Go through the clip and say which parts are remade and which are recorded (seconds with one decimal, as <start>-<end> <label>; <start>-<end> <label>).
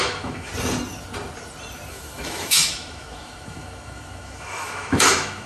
0.0-0.5 remade; 0.5-1.9 recorded; 1.9-5.5 remade